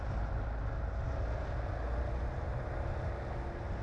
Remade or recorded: recorded